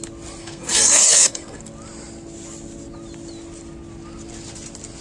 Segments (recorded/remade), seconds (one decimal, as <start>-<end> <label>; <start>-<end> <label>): 0.0-0.4 recorded; 0.4-1.6 remade; 1.6-5.0 recorded